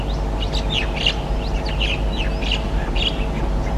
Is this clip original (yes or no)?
yes